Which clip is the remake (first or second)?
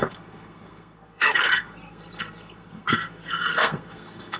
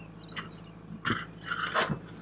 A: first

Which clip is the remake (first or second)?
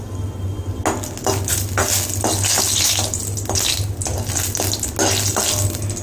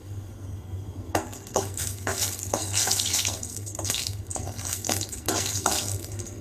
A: second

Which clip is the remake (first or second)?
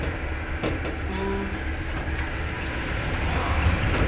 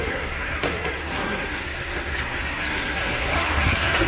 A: second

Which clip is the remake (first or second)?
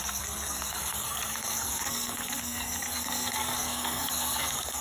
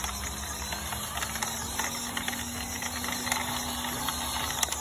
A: first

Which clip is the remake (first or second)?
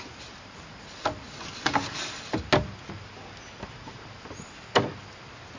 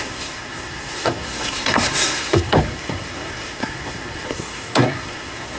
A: second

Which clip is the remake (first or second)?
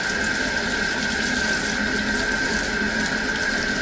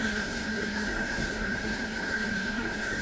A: second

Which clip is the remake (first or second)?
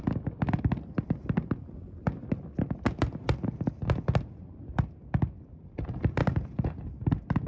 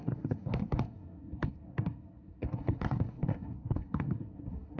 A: second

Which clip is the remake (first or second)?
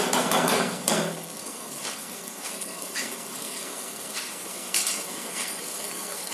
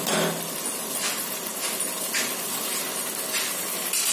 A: first